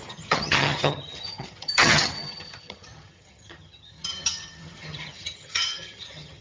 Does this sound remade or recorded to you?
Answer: remade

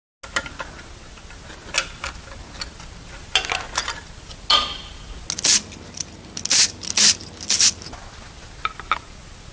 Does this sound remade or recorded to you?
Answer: recorded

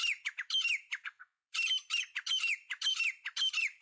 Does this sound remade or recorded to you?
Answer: remade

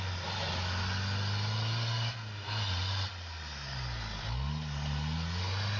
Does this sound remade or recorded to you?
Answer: recorded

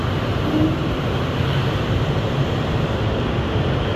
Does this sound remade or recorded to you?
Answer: remade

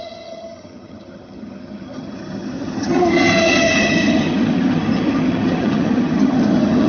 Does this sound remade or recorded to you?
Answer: remade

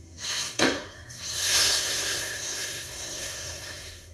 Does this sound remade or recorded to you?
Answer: remade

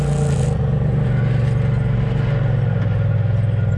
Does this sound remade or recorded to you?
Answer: recorded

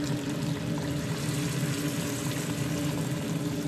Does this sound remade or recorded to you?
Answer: recorded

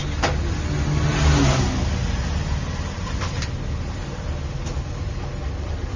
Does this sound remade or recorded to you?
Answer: recorded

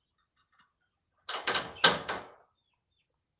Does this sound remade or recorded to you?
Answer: recorded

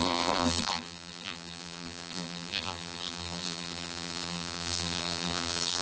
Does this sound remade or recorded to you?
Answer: remade